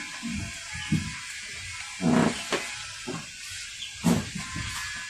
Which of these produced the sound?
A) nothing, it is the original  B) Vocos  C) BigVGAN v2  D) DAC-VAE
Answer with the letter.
A